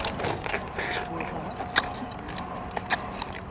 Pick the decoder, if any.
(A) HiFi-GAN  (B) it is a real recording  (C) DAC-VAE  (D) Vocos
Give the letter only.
B